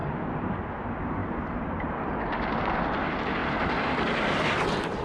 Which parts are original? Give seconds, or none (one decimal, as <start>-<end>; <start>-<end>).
0.6-5.0